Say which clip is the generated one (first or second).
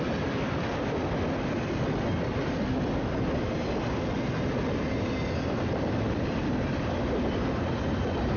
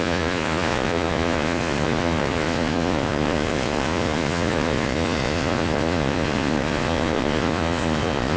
second